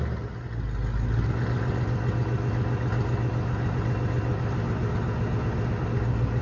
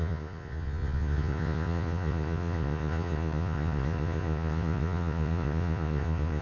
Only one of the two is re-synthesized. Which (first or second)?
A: second